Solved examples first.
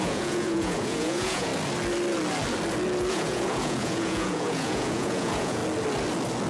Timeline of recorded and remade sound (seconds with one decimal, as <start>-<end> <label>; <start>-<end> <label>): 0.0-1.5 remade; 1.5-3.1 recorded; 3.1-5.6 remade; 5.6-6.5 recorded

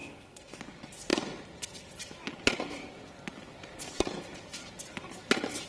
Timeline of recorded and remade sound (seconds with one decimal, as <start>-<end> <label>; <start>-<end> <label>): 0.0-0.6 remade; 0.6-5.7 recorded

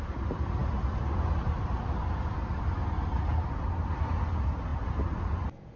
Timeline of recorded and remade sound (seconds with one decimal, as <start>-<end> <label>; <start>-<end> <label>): 0.0-5.8 recorded